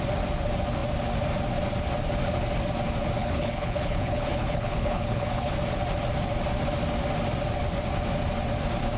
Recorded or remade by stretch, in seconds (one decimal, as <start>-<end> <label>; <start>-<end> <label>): 0.0-3.2 recorded; 3.2-5.5 remade; 5.5-9.0 recorded